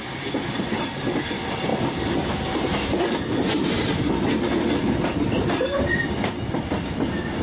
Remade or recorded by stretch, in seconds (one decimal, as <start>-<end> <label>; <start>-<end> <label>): 0.0-7.4 recorded